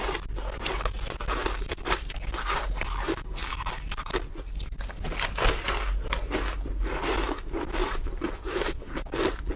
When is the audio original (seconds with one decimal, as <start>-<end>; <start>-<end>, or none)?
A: 0.0-1.4; 2.1-7.8; 8.8-9.6